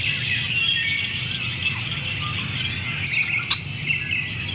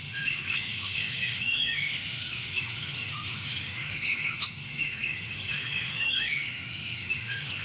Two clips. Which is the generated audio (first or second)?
second